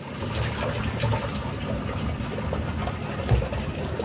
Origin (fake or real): real